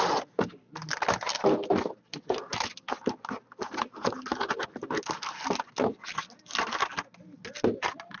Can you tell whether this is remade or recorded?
recorded